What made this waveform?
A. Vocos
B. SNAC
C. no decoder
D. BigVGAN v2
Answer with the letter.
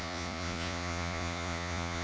A